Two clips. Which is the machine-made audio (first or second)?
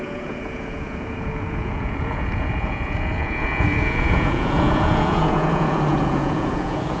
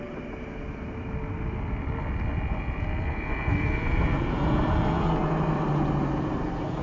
first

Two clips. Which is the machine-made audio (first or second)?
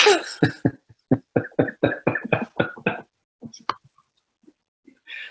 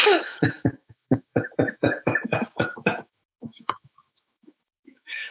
second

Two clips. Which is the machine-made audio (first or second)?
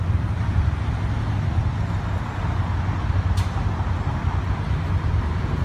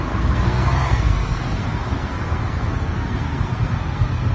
second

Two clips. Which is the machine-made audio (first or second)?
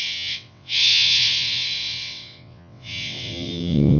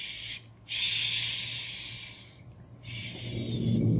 first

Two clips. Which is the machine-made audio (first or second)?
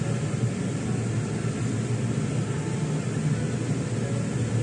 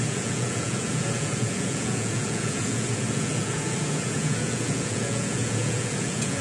second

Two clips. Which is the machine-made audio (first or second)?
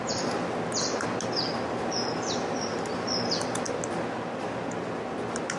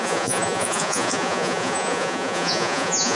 second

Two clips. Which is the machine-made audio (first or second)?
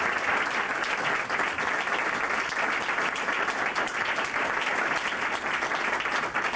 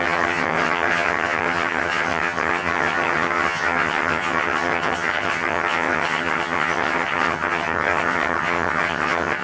second